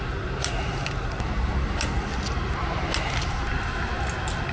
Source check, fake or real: real